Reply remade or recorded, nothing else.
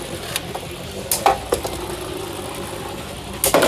recorded